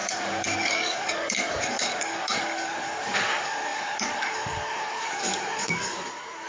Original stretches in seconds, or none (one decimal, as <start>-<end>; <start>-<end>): none